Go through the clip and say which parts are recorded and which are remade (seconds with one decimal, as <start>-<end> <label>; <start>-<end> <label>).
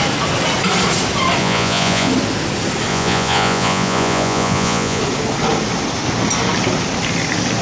0.0-1.4 recorded; 1.4-2.1 remade; 2.1-2.9 recorded; 2.9-5.0 remade; 5.0-7.6 recorded